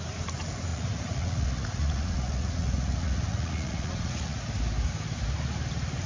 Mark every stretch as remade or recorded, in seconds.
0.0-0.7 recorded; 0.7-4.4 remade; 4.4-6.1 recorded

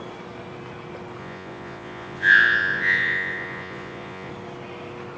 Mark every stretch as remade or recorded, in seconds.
0.0-1.2 recorded; 1.2-4.3 remade; 4.3-5.2 recorded

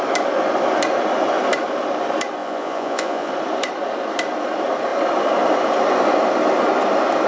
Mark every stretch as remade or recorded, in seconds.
0.0-2.4 recorded; 2.4-3.3 remade; 3.3-7.3 recorded

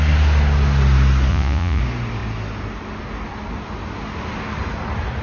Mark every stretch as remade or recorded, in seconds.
0.0-1.3 recorded; 1.3-1.8 remade; 1.8-5.2 recorded